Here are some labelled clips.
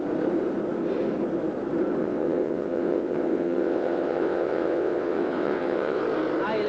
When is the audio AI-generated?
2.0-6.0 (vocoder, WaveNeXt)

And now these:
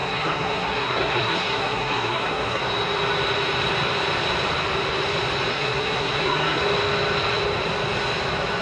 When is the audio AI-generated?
0.0-2.6 (codec, SNAC); 5.5-6.6

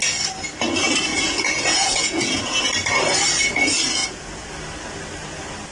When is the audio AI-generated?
1.1-2.4 (vocoder, Vocos); 4.0-4.5

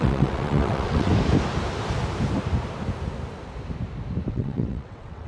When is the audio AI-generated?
0.0-1.1 (vocoder, WaveNeXt); 4.3-5.3